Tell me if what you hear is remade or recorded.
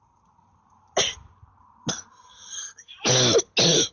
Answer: recorded